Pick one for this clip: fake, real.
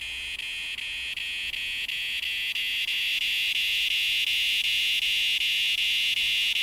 real